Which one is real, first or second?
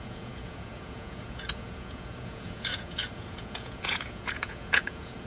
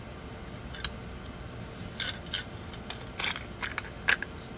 second